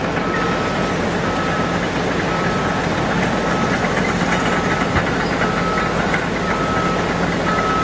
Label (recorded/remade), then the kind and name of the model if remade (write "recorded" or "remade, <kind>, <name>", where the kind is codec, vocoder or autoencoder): recorded